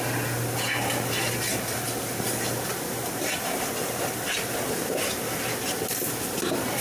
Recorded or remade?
recorded